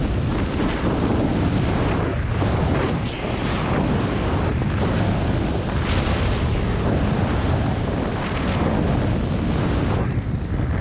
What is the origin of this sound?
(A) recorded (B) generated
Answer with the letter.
A